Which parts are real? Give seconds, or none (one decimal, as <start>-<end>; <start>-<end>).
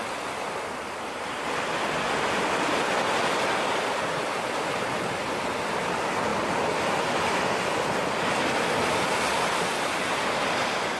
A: 0.0-11.0